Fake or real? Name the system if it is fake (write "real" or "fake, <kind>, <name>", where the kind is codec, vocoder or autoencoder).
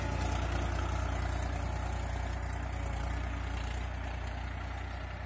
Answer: real